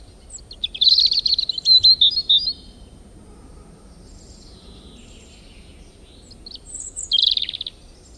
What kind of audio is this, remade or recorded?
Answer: recorded